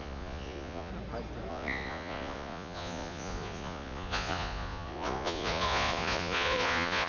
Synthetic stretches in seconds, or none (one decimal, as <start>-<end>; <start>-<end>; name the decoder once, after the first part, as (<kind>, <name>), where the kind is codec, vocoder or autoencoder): 0.0-0.9 (vocoder, Vocos); 1.5-7.1